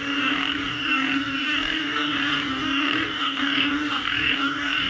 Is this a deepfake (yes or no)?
yes